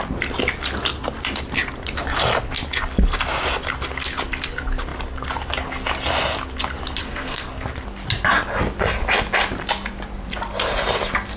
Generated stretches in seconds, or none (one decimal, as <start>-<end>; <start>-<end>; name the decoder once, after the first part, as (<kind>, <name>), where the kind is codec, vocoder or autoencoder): 7.0-7.5 (codec, SNAC)